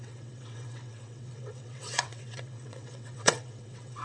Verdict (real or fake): fake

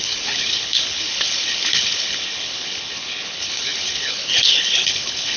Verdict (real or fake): fake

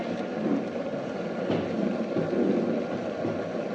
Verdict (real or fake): real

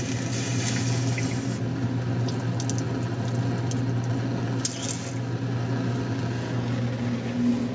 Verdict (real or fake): real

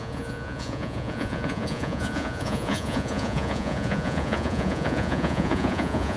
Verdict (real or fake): fake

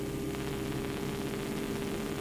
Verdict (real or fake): real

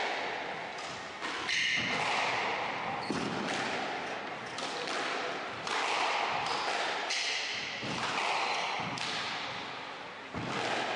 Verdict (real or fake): real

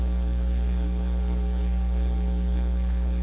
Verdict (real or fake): fake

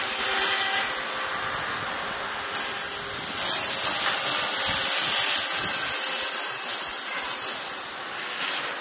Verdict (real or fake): real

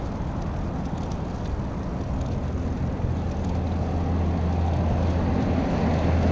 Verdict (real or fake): real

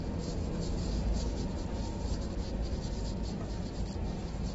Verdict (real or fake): real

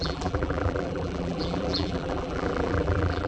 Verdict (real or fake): fake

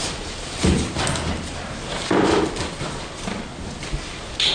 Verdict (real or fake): real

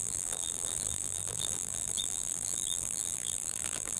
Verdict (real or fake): fake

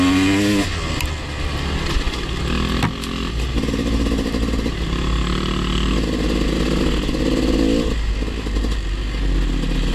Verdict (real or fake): real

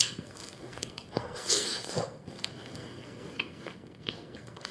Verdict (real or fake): fake